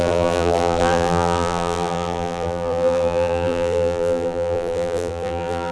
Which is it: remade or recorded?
remade